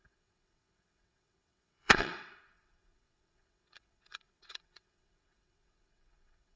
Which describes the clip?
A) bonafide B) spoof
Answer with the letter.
B